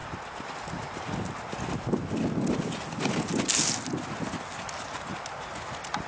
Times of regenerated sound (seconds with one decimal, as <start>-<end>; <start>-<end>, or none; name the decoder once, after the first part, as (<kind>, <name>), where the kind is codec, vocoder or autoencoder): 3.7-5.1 (vocoder, BigVGAN v2)